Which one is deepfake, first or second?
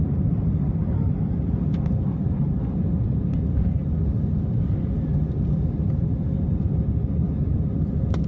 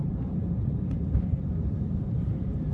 second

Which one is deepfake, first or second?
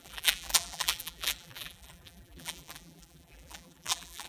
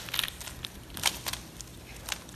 first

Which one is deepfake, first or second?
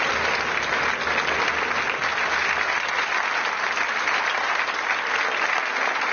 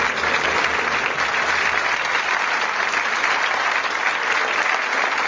second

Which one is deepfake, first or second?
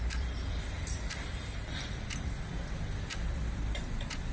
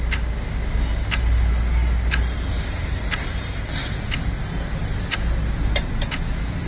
first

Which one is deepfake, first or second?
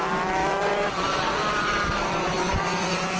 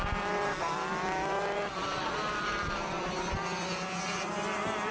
first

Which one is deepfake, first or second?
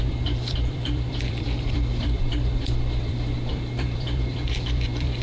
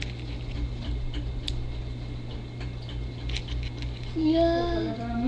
first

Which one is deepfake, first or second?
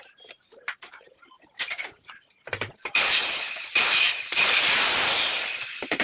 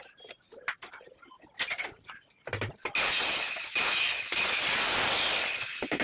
first